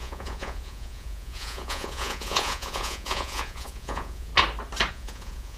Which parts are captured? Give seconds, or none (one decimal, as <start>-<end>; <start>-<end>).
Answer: 4.3-4.9